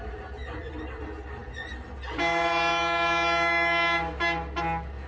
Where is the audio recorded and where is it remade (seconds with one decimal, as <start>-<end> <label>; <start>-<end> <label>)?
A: 0.0-0.4 recorded; 0.4-1.0 remade; 1.0-5.1 recorded